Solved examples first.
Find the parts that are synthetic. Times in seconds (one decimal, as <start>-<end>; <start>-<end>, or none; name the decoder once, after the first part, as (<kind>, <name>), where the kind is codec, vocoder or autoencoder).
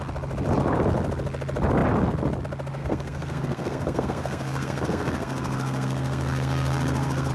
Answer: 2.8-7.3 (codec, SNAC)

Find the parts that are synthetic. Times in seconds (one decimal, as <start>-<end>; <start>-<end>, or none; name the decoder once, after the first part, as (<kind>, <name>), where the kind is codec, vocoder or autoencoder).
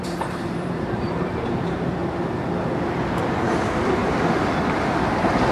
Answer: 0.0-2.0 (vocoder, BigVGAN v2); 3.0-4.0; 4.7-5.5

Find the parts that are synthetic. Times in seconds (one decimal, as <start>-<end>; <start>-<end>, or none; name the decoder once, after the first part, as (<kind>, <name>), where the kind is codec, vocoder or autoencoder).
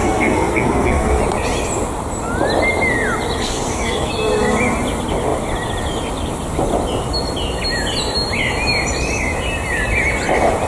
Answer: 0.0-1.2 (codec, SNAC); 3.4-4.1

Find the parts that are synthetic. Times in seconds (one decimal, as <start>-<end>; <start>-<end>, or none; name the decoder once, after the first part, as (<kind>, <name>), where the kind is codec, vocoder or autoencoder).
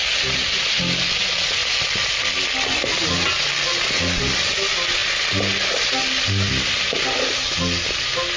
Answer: none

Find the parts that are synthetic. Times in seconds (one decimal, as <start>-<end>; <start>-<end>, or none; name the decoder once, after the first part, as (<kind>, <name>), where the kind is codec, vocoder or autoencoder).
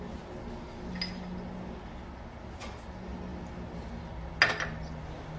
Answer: none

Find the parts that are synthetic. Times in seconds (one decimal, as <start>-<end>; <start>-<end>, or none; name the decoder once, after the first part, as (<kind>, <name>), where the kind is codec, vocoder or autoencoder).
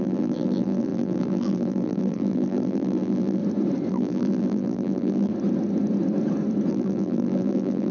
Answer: 0.0-3.4 (vocoder, BigVGAN v2); 3.9-5.3; 6.7-7.9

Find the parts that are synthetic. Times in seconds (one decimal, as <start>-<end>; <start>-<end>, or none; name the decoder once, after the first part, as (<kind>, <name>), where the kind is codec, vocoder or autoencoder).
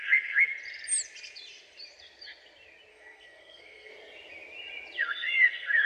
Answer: 0.0-0.5 (codec, SNAC); 2.9-3.9; 5.0-5.9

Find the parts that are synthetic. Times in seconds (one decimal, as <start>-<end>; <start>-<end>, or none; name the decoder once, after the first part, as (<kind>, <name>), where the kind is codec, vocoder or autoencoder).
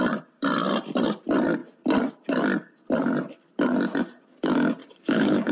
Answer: 4.8-5.5 (codec, DAC)